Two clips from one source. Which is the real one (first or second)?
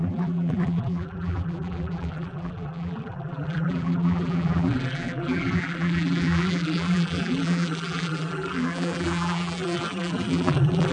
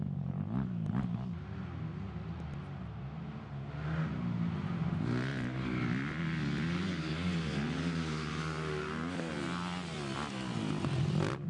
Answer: second